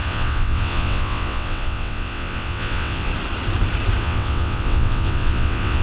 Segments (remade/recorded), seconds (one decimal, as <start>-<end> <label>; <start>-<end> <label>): 0.0-3.1 remade; 3.1-4.0 recorded; 4.0-5.8 remade